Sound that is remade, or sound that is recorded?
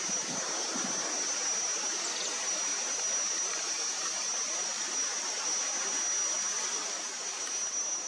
recorded